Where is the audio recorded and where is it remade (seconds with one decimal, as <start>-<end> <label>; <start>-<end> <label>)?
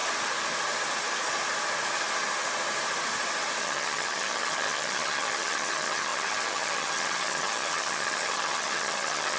0.0-3.6 recorded; 3.6-9.4 remade